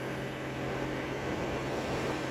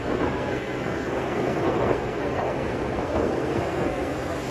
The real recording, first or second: first